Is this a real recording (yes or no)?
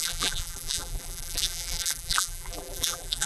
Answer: no